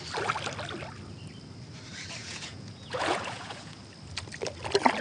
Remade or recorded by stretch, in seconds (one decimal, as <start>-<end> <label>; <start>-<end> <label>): 0.0-2.2 recorded; 2.2-3.8 remade; 3.8-5.0 recorded